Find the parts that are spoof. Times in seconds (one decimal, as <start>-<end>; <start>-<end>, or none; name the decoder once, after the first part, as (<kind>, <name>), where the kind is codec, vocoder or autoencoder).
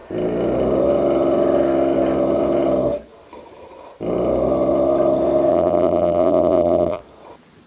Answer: 5.5-7.0 (vocoder, BigVGAN v2)